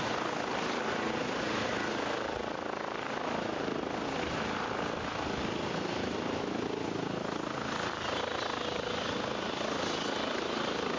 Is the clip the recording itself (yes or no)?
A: yes